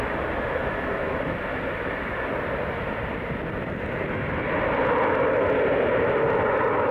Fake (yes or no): no